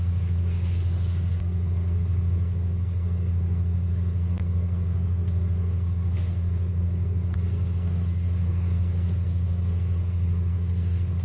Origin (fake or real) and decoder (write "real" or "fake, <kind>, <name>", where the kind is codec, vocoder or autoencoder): fake, codec, SNAC